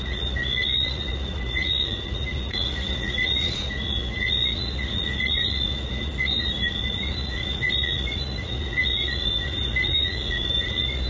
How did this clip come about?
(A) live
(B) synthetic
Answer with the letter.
B